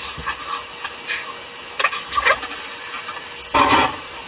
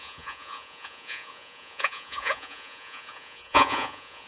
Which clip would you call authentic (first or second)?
first